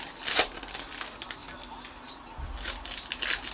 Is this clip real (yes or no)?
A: yes